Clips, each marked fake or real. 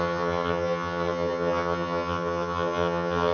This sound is fake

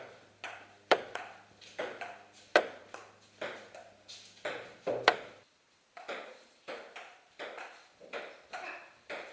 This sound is real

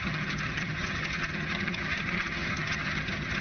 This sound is fake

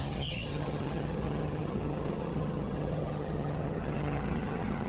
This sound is fake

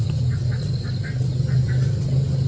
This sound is real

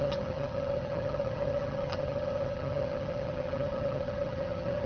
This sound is fake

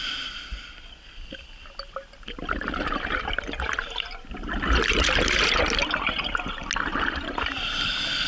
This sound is real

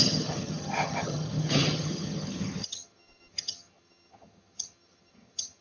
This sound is fake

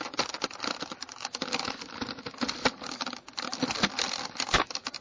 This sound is real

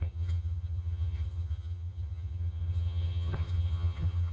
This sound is fake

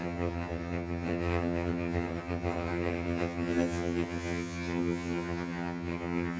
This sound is fake